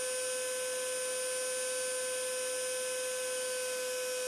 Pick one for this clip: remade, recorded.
recorded